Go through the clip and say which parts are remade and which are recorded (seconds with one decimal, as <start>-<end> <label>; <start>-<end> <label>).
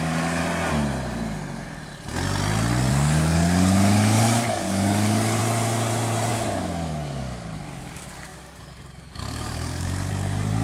0.0-0.4 remade; 0.4-2.9 recorded; 2.9-5.4 remade; 5.4-6.3 recorded; 6.3-10.6 remade